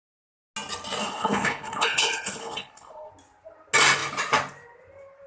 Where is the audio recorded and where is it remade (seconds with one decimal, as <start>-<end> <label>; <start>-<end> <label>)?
0.0-1.0 recorded; 1.0-3.1 remade; 3.1-5.3 recorded